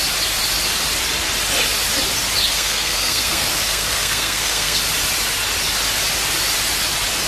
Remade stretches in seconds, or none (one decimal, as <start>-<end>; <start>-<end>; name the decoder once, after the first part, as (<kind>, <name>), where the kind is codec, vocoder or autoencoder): 2.4-4.8 (codec, SNAC)